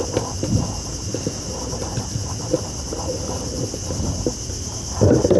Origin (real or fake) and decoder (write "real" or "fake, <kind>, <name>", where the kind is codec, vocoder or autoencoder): real